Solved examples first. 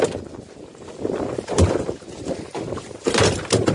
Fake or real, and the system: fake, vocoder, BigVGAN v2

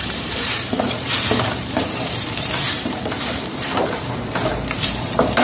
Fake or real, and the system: fake, vocoder, BigVGAN v2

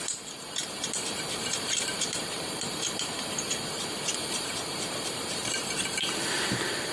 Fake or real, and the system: fake, vocoder, BigVGAN v2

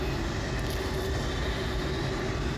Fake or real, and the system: real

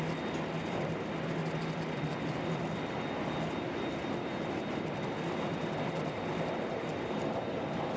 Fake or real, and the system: real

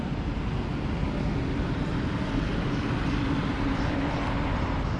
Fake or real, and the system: real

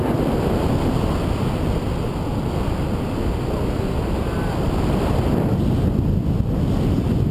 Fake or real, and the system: real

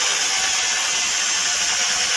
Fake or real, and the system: real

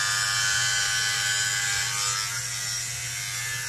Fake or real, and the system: real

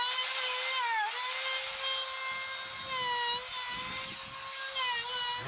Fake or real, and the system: real